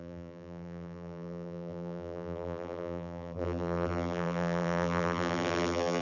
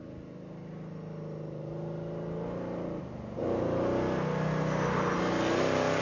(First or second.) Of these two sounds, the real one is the second